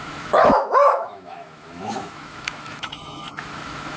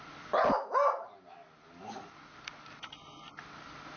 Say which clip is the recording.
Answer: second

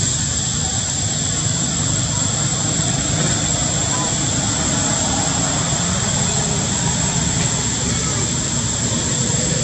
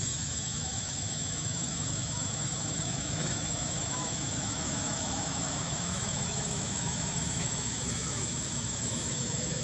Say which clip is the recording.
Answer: first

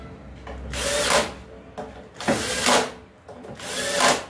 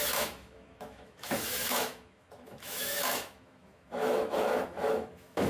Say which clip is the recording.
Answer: first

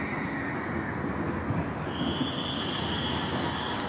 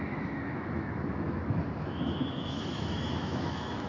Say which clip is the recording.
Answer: first